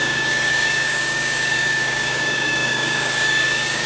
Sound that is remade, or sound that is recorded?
remade